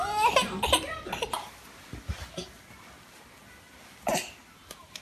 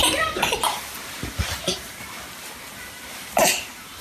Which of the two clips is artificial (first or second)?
second